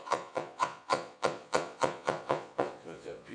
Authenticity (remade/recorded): remade